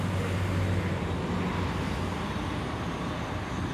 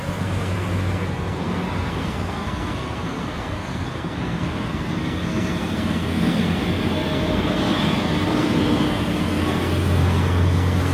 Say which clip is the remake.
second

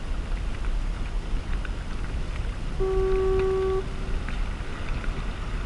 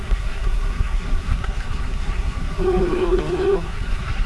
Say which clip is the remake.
second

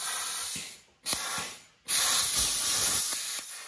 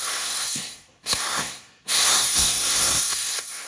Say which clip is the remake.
second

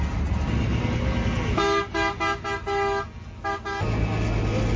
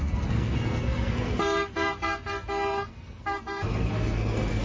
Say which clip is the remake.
second